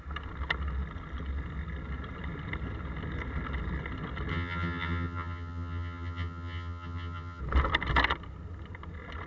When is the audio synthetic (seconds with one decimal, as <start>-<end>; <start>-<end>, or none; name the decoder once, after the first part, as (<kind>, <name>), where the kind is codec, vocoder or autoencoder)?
4.3-7.4 (vocoder, HiFi-GAN)